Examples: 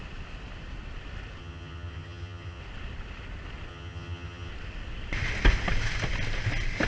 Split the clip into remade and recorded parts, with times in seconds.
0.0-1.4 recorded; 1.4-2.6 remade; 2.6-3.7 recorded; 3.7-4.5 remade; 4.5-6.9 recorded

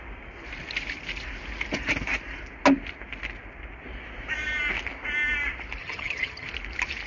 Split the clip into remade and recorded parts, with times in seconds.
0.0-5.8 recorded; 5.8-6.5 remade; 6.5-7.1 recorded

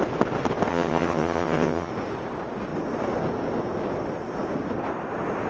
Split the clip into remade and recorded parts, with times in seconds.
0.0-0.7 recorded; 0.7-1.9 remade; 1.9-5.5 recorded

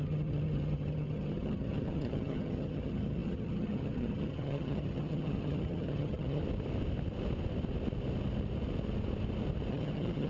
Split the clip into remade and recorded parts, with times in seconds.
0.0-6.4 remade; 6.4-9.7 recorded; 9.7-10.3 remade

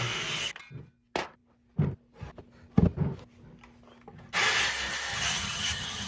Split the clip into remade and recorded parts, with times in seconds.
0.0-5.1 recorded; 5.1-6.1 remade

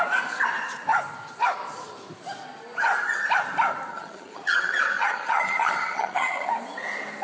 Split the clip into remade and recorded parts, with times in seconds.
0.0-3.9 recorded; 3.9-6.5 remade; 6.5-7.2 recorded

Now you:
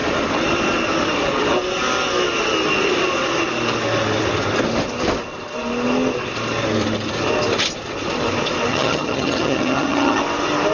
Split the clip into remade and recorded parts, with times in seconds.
0.0-8.7 recorded; 8.7-10.2 remade; 10.2-10.7 recorded